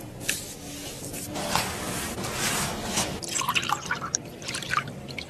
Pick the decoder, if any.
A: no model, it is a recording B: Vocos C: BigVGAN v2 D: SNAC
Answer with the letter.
A